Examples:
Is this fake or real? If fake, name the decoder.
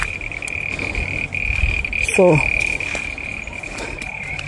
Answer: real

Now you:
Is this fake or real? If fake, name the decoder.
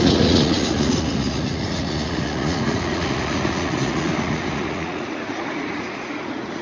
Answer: fake, vocoder, Vocos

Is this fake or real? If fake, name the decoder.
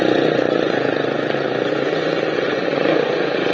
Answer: fake, vocoder, Vocos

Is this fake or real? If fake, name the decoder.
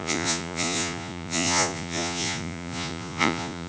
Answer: fake, vocoder, Vocos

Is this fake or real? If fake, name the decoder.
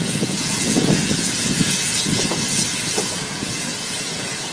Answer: fake, vocoder, Vocos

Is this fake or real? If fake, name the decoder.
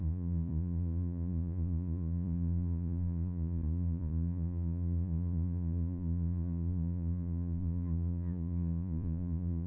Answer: fake, vocoder, Vocos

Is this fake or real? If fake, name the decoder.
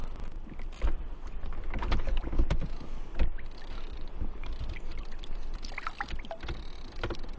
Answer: real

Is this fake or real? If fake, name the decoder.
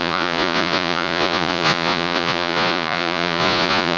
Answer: fake, vocoder, Vocos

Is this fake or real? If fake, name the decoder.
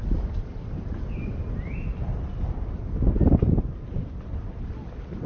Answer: real